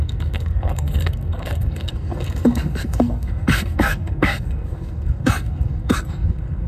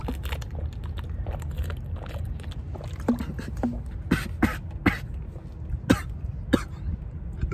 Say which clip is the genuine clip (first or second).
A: second